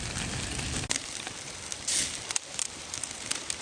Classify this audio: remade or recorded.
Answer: recorded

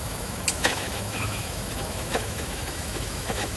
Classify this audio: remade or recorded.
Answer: remade